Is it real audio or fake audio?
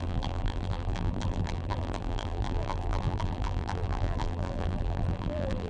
fake